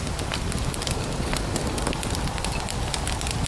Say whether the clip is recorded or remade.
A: recorded